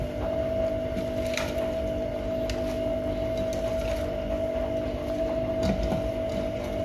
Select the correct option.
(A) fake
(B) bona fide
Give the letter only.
B